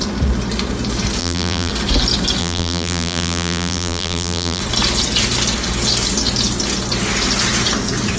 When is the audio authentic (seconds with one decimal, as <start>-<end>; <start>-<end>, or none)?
0.0-1.2; 1.7-2.4; 4.6-8.2